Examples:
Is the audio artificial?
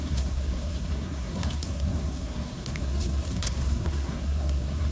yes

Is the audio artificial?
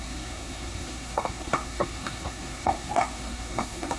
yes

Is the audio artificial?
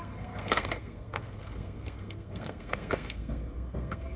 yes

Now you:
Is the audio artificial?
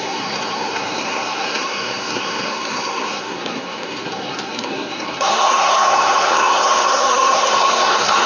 yes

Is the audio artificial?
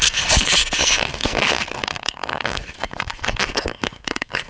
yes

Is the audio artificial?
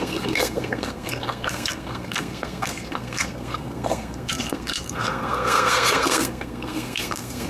yes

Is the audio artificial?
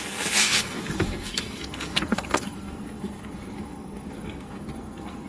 yes